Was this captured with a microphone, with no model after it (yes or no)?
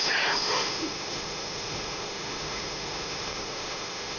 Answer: no